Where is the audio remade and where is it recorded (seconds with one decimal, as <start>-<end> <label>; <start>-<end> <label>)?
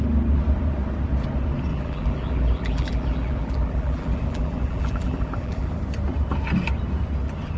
0.0-1.7 recorded; 1.7-5.8 remade; 5.8-7.6 recorded